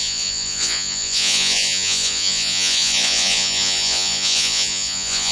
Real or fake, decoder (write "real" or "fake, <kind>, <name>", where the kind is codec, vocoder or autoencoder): fake, vocoder, Vocos